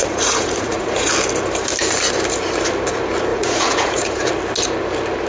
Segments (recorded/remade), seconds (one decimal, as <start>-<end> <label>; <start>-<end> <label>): 0.0-1.1 remade; 1.1-3.3 recorded; 3.3-4.2 remade; 4.2-5.3 recorded